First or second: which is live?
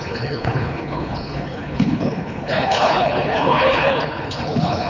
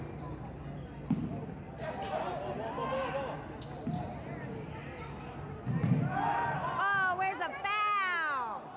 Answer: second